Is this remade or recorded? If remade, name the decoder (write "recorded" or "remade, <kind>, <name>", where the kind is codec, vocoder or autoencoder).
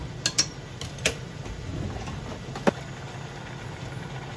recorded